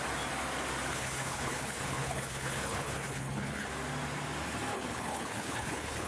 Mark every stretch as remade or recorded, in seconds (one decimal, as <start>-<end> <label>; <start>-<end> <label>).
0.0-0.9 recorded; 0.9-3.7 remade; 3.7-4.7 recorded; 4.7-6.1 remade